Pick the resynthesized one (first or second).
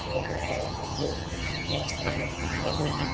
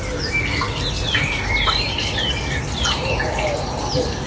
first